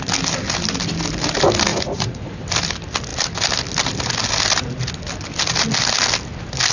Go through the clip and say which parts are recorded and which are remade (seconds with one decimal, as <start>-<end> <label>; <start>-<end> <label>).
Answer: 0.0-1.7 recorded; 1.7-2.4 remade; 2.4-6.7 recorded